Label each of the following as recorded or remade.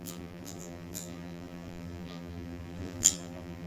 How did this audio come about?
remade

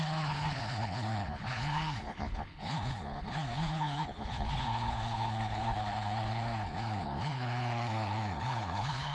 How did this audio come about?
remade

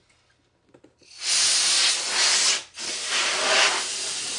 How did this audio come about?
recorded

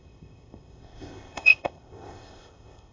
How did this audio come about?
remade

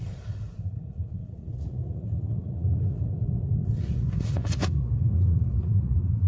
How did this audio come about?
remade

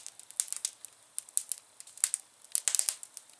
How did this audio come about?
recorded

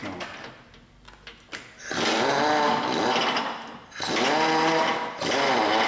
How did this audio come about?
recorded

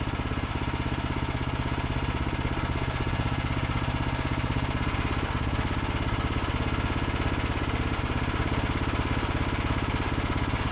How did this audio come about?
recorded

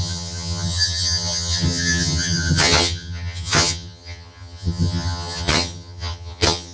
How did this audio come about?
remade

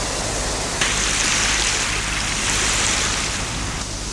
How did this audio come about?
recorded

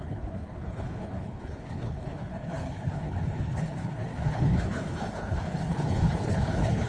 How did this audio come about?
remade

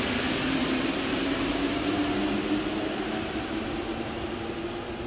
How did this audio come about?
recorded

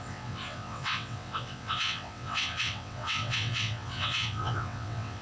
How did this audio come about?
remade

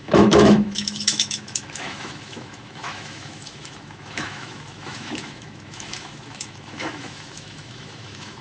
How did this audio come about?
remade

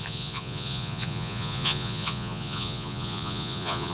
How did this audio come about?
remade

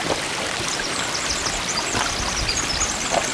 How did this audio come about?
recorded